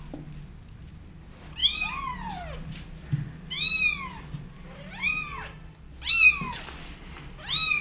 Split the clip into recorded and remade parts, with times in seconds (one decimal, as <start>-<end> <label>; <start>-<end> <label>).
0.0-7.8 recorded